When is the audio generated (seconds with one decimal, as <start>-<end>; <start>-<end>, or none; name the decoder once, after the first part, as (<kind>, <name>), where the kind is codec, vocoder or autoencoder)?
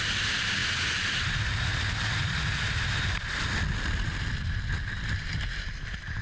none